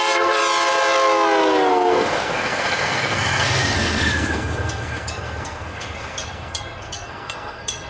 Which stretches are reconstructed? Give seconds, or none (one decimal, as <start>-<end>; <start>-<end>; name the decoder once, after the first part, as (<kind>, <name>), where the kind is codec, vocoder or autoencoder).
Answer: 0.0-0.4 (codec, SNAC); 1.7-7.9